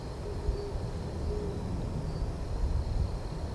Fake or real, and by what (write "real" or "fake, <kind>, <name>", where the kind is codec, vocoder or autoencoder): real